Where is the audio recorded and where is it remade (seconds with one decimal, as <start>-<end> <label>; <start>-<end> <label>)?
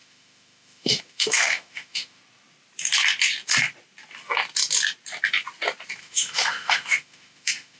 0.0-2.2 remade; 2.2-6.0 recorded; 6.0-7.8 remade